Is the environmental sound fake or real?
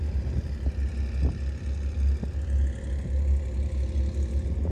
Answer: real